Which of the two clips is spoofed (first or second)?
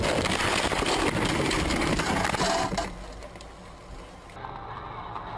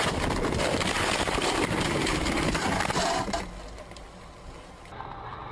second